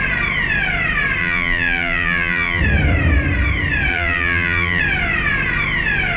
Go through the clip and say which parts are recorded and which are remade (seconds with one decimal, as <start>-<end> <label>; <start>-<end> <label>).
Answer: 0.0-1.2 recorded; 1.2-2.6 remade; 2.6-3.9 recorded; 3.9-4.8 remade; 4.8-6.2 recorded